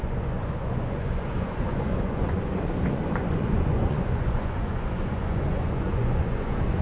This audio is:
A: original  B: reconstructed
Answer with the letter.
B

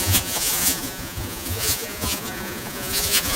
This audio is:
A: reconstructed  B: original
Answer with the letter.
A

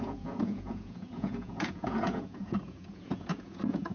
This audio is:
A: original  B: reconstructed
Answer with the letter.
B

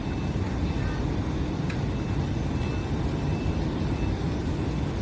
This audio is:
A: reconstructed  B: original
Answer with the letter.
B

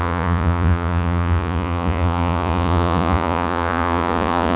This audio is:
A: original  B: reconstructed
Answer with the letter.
B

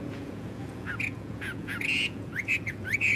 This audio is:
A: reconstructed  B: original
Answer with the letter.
A